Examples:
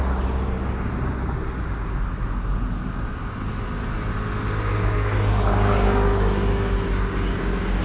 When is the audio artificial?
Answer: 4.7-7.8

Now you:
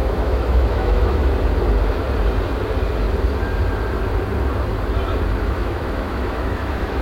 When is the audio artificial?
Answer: 0.0-1.2; 5.4-7.0

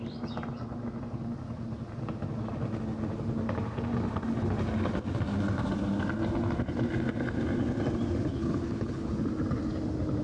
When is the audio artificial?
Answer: 8.3-9.1

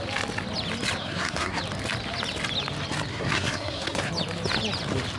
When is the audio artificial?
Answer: 1.0-1.6; 3.1-4.1

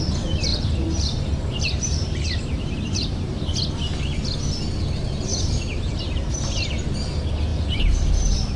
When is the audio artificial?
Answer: 0.5-3.7; 5.3-6.4; 7.5-8.1

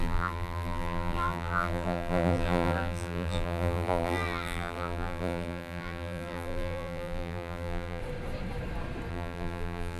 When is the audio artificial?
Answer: 0.0-8.0; 9.1-10.0